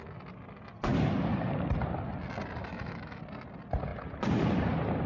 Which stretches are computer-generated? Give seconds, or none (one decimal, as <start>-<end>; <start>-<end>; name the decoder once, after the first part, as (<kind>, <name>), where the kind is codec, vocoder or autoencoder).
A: 2.6-3.2 (autoencoder, DAC-VAE)